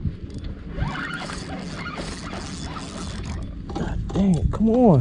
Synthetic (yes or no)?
no